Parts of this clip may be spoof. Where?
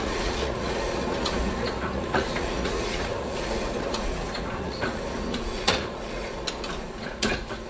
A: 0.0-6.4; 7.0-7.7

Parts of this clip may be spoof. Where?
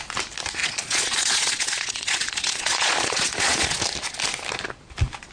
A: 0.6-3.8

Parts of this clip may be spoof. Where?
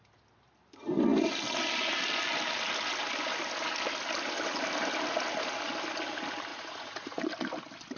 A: 6.5-7.2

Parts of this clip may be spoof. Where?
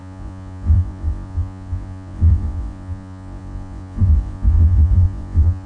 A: 0.0-5.7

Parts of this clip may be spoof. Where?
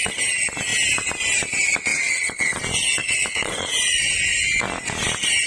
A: 1.9-2.6; 3.0-3.7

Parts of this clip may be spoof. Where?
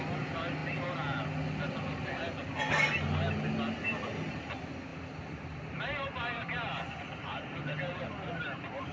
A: none